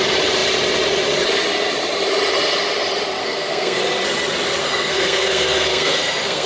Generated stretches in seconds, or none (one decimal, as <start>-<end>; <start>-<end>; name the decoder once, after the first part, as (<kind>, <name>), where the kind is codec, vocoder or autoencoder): 3.2-3.8 (codec, SNAC); 4.6-6.5